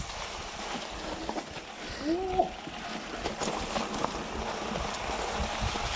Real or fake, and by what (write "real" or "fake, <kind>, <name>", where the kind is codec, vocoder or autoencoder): real